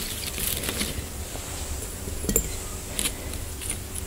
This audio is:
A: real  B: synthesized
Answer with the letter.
A